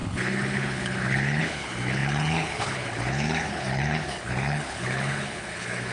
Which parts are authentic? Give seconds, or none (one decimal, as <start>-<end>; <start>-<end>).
none